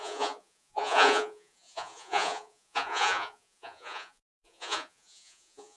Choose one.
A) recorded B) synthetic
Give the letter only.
B